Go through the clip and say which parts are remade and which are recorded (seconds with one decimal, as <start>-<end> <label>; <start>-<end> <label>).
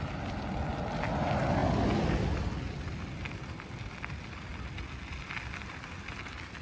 0.0-6.6 recorded